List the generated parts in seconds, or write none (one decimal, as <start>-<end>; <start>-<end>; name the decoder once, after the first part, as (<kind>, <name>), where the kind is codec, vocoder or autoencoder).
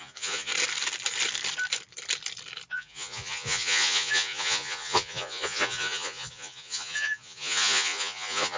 0.0-0.5 (vocoder, Vocos); 2.7-8.6